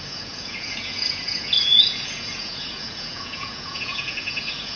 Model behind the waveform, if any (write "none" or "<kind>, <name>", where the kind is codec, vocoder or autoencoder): vocoder, Vocos